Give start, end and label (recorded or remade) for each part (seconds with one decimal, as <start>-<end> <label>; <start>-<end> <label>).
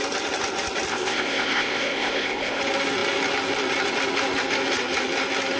0.0-0.9 recorded; 0.9-2.6 remade; 2.6-5.6 recorded